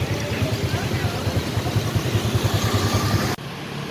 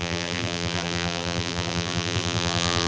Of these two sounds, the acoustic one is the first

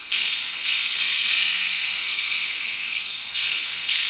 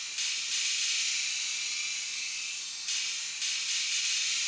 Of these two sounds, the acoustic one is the second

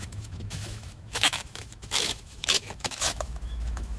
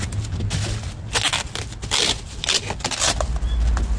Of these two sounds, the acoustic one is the second